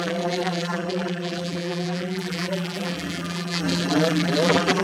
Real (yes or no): no